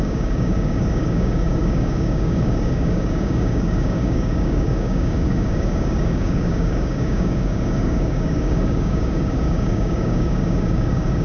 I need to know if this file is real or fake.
fake